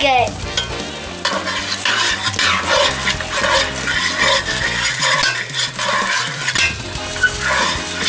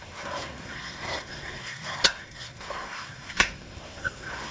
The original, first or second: first